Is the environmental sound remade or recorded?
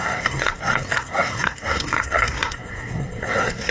remade